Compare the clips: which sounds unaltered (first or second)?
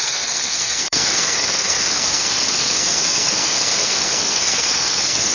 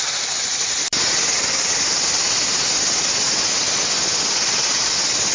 second